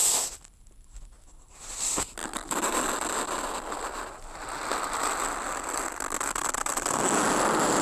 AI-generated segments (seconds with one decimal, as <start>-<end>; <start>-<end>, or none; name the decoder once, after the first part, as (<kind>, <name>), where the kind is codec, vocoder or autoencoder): none